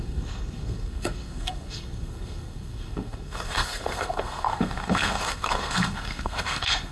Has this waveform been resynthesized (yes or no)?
yes